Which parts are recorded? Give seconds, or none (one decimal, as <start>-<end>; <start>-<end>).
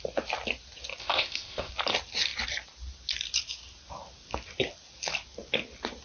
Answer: 0.0-1.0; 1.7-6.0